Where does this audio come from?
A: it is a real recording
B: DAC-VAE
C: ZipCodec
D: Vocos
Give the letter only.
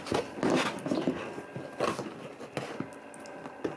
A